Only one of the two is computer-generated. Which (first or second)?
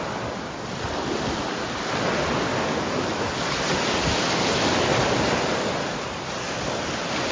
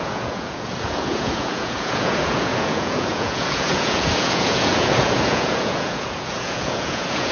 second